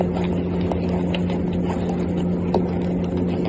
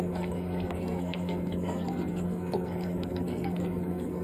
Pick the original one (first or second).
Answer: first